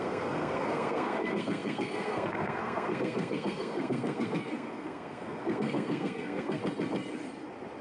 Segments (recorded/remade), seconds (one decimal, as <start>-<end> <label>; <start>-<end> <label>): 0.0-6.6 remade; 6.6-7.8 recorded